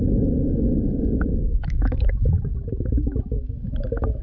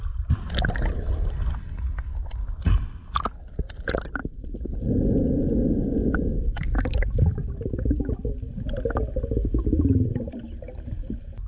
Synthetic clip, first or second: first